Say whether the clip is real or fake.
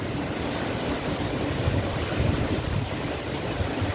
real